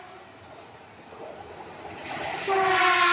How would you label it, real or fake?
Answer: real